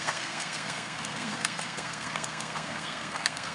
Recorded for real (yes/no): no